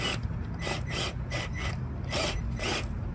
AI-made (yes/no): no